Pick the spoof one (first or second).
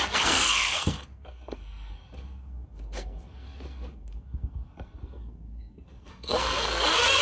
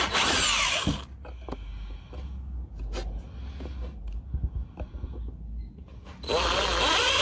first